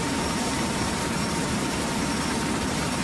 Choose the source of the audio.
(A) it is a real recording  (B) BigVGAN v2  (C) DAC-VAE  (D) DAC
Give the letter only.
B